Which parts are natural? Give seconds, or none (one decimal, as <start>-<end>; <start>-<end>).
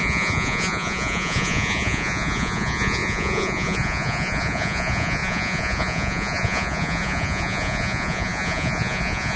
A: none